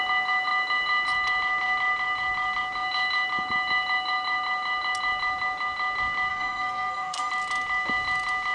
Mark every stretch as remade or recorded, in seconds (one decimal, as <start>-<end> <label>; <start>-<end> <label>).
0.0-6.3 recorded; 6.3-7.3 remade; 7.3-8.5 recorded